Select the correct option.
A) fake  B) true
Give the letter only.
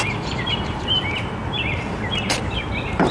A